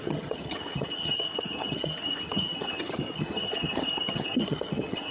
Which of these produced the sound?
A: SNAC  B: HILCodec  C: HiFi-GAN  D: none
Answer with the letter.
C